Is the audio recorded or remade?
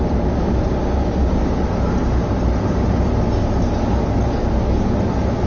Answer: recorded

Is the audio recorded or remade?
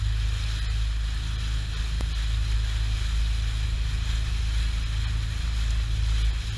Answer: recorded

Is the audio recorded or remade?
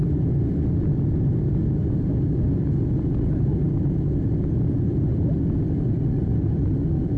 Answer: recorded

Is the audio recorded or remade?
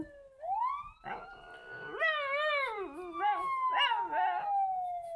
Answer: recorded